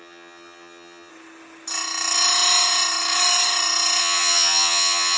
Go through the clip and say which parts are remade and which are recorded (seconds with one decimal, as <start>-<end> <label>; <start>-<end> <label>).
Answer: 0.0-1.1 remade; 1.1-4.0 recorded; 4.0-5.2 remade